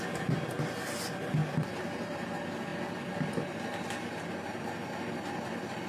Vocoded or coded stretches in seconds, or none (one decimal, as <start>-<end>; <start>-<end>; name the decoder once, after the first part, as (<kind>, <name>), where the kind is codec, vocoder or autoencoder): 1.4-2.3 (vocoder, BigVGAN v2)